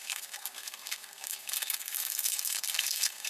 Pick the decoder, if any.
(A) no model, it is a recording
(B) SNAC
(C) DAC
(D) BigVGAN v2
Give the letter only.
B